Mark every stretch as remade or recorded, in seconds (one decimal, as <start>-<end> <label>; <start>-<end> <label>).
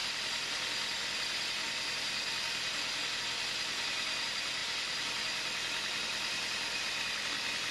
0.0-4.6 recorded; 4.6-6.8 remade; 6.8-7.7 recorded